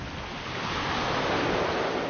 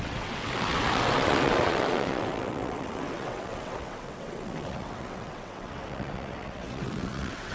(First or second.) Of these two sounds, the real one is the first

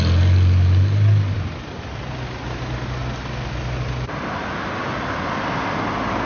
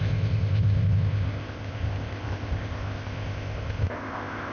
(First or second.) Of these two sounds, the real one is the first